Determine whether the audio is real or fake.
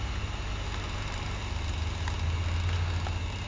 real